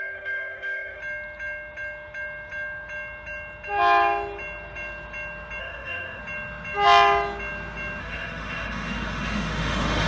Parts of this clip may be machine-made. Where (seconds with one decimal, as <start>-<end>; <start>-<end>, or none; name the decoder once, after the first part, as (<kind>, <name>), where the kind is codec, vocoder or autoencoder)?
0.0-1.0 (autoencoder, DAC-VAE); 5.6-6.2; 8.0-10.1